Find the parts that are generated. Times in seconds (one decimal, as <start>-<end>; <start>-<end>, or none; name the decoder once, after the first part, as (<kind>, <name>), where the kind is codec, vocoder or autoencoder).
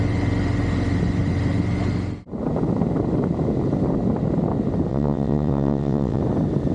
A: 4.9-6.2 (vocoder, WaveNeXt)